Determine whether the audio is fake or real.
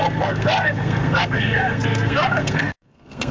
fake